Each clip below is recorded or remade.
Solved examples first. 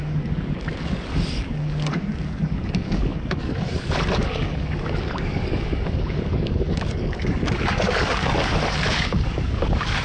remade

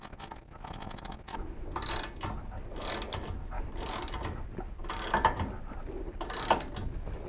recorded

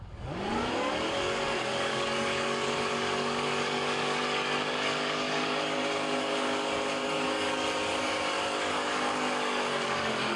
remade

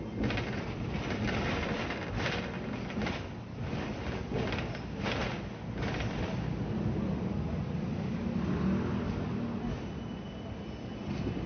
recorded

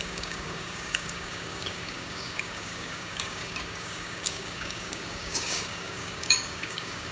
remade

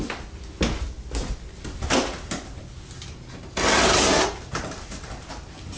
recorded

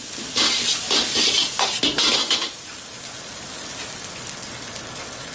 recorded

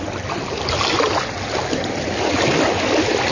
recorded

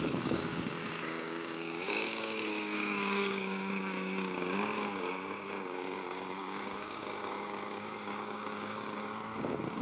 remade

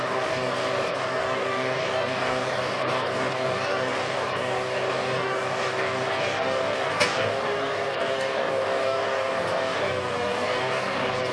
remade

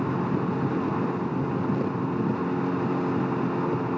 recorded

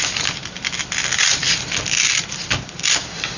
recorded